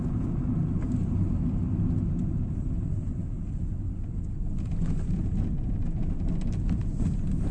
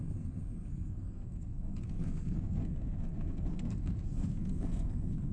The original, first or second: first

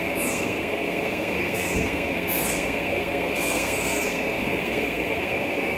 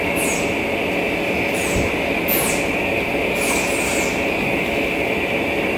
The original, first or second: second